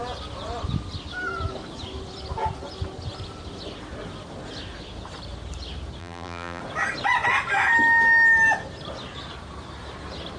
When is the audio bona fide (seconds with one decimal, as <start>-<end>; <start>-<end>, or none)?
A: 0.0-6.0; 6.6-10.4